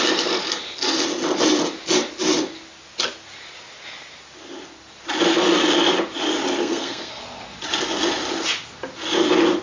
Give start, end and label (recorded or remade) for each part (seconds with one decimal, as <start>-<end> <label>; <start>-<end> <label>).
0.0-6.6 recorded; 6.6-7.2 remade; 7.2-9.6 recorded